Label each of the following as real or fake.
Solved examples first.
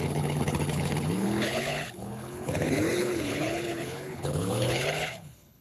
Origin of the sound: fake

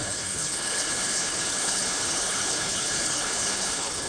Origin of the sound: fake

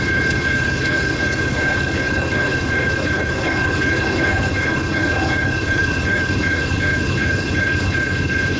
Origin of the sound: fake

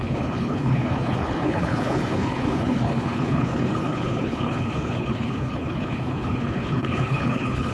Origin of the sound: fake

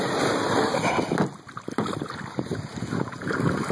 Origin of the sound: real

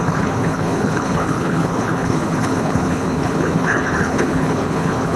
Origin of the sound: fake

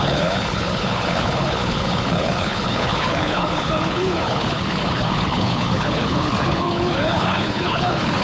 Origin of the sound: fake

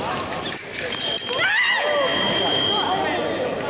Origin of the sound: real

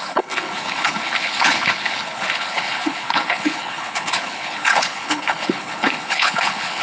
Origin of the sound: fake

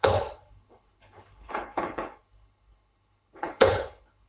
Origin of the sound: fake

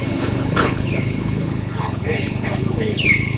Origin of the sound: fake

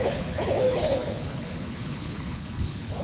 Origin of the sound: fake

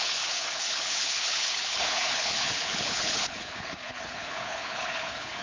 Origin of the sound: fake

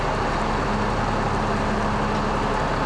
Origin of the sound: real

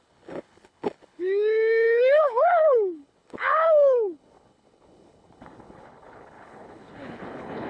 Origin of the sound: fake